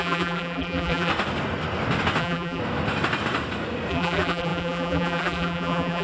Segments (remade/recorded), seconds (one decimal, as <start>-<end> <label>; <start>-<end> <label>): 0.0-1.1 remade; 1.1-2.2 recorded; 2.2-2.6 remade; 2.6-3.9 recorded; 3.9-6.0 remade

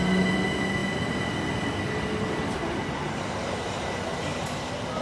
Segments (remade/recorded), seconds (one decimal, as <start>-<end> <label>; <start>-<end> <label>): 0.0-5.0 recorded

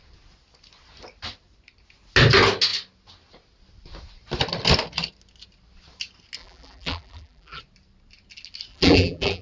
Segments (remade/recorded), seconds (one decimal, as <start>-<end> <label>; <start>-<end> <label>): 0.0-6.4 recorded; 6.4-7.6 remade; 7.6-8.7 recorded; 8.7-9.4 remade